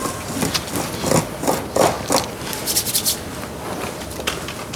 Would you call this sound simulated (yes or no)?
no